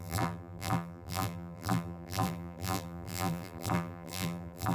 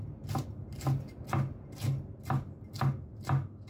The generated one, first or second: first